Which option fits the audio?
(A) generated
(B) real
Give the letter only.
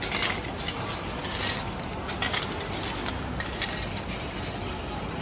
B